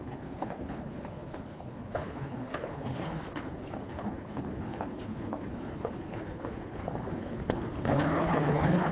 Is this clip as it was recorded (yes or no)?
no